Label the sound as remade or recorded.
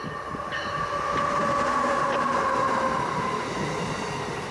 recorded